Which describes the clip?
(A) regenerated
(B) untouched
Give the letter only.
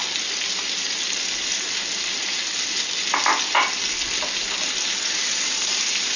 B